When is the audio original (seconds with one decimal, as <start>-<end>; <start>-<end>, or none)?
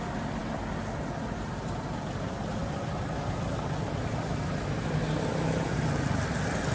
0.0-6.7